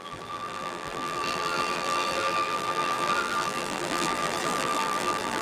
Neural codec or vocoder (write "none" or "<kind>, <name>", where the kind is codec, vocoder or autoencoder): vocoder, BigVGAN v2